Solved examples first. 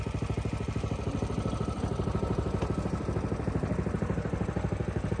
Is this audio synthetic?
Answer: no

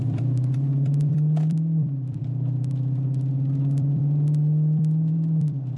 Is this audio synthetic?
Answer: yes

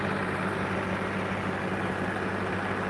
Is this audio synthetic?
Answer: no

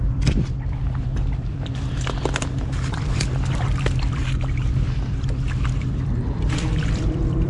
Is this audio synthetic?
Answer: yes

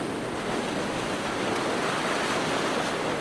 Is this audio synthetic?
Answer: no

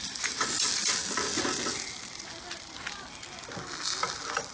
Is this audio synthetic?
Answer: no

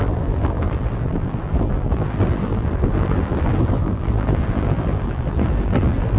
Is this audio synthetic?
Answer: yes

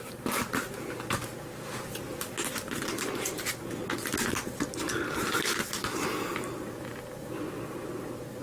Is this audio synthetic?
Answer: no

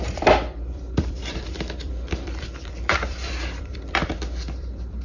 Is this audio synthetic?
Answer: yes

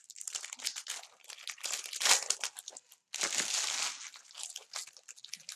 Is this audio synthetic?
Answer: no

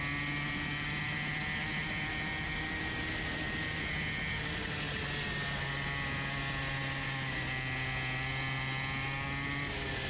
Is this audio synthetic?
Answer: no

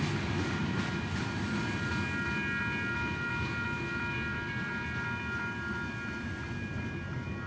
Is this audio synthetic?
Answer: no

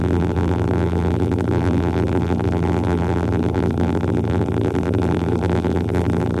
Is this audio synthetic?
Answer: yes